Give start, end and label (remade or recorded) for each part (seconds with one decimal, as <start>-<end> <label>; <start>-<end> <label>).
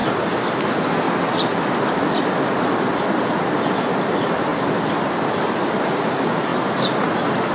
0.0-2.4 recorded; 2.4-4.5 remade; 4.5-5.4 recorded; 5.4-7.5 remade